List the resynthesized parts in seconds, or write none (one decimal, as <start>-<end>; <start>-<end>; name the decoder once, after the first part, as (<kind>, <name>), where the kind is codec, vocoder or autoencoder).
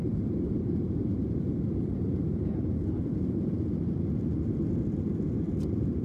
0.0-3.6 (vocoder, BigVGAN v2)